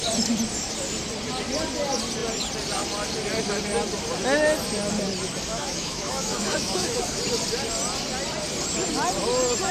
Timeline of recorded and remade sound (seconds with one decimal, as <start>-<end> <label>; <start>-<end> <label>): 0.0-5.5 recorded; 5.5-7.2 remade; 7.2-9.7 recorded